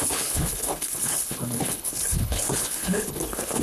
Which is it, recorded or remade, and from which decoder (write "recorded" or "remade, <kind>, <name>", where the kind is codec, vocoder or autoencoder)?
remade, codec, HILCodec